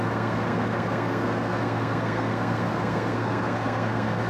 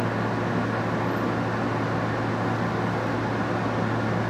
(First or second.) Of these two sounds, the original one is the second